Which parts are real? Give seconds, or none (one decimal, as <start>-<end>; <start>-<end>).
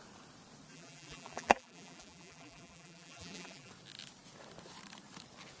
0.0-0.7; 3.7-5.6